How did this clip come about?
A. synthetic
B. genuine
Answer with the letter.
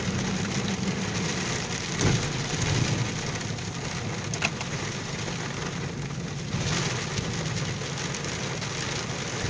B